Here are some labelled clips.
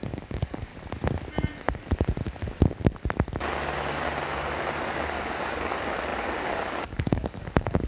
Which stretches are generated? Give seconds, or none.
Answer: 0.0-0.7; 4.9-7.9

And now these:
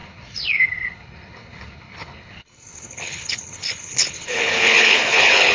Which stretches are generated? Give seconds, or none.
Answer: 0.0-5.5

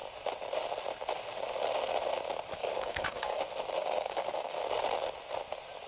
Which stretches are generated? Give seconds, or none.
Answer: 2.6-3.4; 3.8-4.6

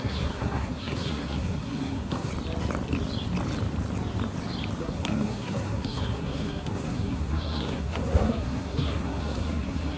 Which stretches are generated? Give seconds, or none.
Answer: 0.0-2.3; 4.8-10.0